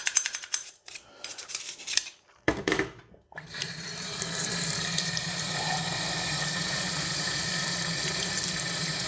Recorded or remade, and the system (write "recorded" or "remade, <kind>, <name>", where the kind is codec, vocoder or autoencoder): remade, vocoder, BigVGAN v2